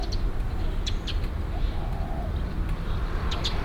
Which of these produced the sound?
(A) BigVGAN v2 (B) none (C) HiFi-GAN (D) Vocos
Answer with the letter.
A